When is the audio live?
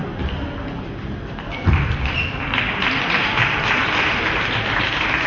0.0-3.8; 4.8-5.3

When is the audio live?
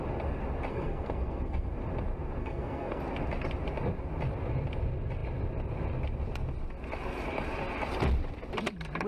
0.0-0.7; 1.7-2.4; 3.0-9.1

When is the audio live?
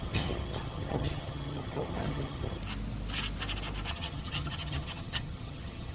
2.6-3.9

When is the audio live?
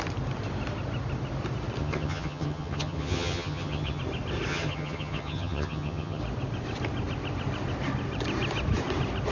0.0-1.8; 4.0-4.5; 6.2-9.3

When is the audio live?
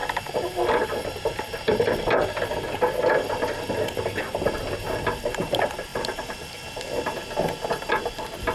0.0-8.5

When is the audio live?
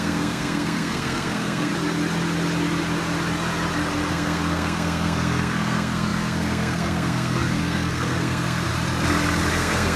1.7-4.1; 8.7-9.5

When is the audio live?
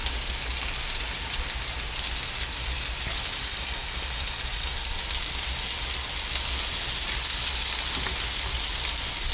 0.0-9.3